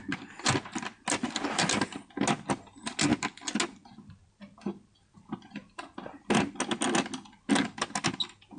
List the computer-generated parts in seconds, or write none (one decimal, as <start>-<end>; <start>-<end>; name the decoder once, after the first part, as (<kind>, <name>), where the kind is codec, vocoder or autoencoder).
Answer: none